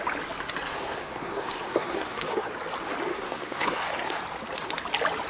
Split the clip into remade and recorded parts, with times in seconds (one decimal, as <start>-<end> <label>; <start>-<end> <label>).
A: 0.0-0.7 recorded; 0.7-2.5 remade; 2.5-3.1 recorded; 3.1-4.2 remade; 4.2-5.3 recorded